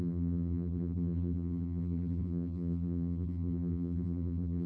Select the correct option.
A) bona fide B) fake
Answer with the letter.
B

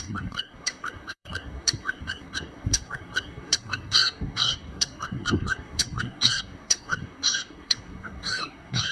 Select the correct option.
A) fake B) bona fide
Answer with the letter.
A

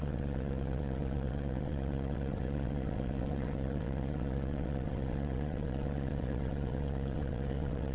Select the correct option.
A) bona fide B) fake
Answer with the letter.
B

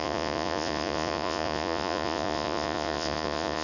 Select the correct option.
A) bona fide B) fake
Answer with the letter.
B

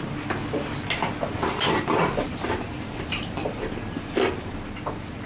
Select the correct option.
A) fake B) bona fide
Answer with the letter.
B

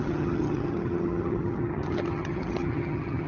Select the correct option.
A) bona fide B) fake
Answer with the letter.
B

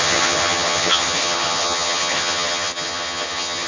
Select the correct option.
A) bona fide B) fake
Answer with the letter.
B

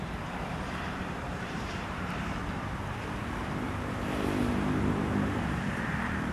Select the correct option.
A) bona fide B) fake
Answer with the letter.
B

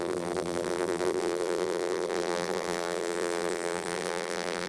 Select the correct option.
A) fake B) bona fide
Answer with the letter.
A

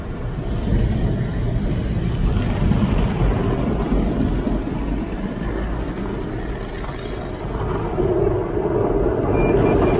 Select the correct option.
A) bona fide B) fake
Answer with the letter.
A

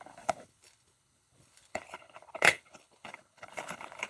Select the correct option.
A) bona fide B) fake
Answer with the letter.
B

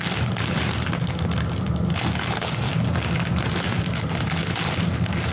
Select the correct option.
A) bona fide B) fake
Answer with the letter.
A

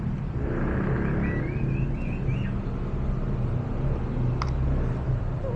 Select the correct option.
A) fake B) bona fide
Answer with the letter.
B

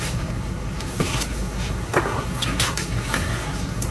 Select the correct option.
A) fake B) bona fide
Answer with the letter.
A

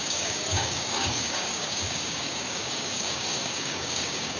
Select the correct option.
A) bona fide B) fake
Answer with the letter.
B